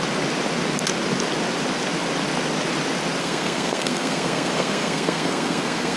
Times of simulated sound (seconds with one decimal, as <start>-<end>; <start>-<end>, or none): 3.2-6.0

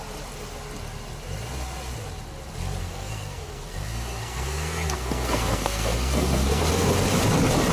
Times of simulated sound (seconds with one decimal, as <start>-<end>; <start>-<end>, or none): 2.8-6.6

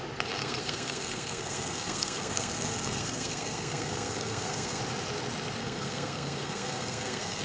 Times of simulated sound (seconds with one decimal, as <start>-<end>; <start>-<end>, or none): 0.4-4.8; 5.6-7.4

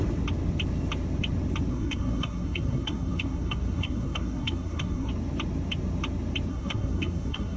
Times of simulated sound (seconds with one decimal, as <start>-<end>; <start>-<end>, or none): 1.7-5.1; 6.5-7.6

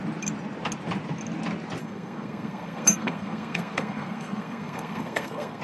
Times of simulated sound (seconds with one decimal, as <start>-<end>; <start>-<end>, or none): 1.8-5.6

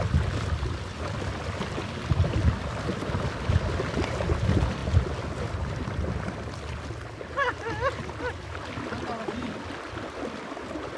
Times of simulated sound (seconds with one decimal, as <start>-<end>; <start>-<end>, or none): none